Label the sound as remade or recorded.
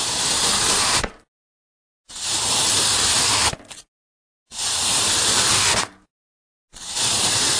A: recorded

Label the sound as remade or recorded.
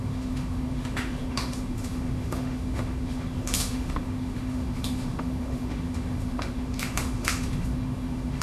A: remade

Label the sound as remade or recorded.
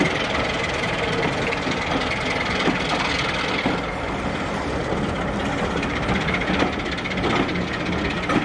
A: recorded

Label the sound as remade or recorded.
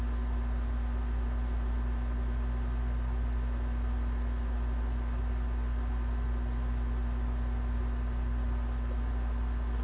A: recorded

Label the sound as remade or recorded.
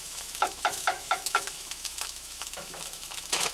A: remade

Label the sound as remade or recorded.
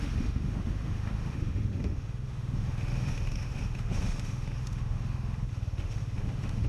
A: remade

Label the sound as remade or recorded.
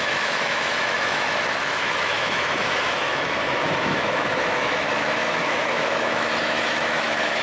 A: remade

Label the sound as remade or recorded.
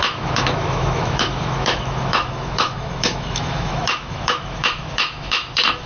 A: remade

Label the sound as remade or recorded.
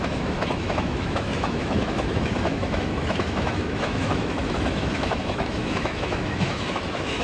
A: remade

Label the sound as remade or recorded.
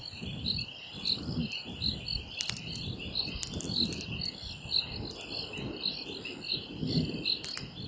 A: recorded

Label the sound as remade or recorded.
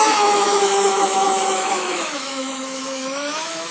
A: remade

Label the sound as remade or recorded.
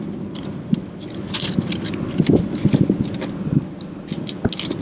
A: recorded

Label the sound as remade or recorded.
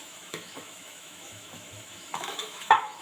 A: remade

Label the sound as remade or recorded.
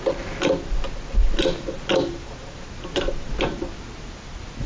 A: recorded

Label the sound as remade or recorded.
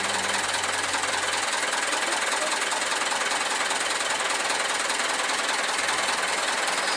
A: recorded